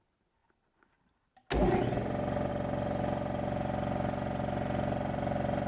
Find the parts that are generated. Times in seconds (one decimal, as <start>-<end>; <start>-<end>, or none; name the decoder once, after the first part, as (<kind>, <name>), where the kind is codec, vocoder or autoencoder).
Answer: none